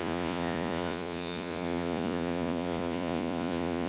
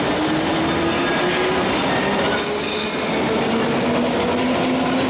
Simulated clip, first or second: first